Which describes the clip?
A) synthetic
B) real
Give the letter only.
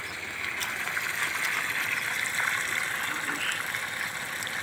B